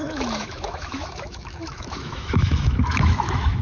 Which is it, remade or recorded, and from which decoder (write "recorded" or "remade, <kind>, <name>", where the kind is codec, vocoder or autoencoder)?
remade, autoencoder, DAC-VAE